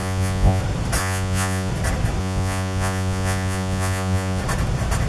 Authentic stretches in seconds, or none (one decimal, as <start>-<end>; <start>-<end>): 0.6-1.0; 1.7-2.2; 4.4-5.1